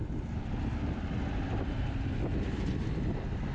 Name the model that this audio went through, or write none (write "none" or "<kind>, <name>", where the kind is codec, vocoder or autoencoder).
none